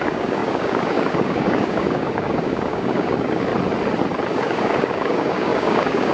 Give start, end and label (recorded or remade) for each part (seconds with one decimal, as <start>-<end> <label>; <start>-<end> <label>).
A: 0.0-3.5 remade; 3.5-4.3 recorded; 4.3-6.1 remade